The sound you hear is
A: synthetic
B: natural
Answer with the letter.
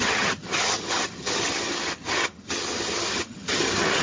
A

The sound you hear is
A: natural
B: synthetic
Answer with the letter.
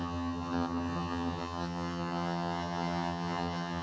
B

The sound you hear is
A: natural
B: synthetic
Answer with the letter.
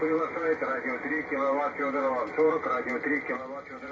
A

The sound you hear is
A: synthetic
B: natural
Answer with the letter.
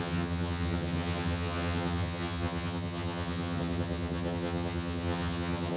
A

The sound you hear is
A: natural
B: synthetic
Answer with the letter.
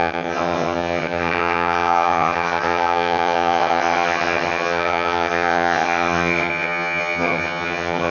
B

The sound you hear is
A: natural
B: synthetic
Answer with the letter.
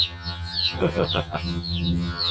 B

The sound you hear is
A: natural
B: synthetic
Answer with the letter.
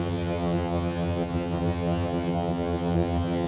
B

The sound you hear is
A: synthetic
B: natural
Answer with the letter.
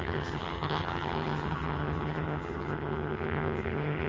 A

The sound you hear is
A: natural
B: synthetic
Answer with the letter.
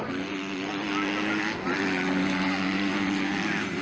A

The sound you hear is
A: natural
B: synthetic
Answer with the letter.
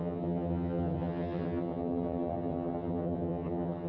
B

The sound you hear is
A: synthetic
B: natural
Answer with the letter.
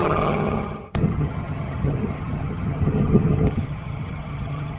A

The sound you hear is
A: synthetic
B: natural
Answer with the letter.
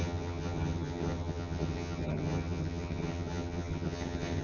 A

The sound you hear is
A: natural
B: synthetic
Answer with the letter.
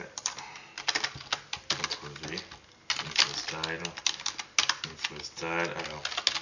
A